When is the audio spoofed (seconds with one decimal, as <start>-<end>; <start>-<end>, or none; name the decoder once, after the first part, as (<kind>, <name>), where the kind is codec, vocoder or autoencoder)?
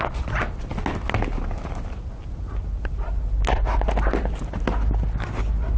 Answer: none